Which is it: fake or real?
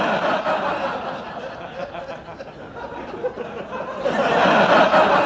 real